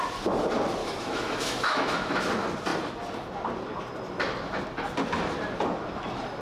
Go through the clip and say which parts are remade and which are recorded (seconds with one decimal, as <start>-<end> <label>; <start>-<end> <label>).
0.0-0.8 recorded; 0.8-2.3 remade; 2.3-6.4 recorded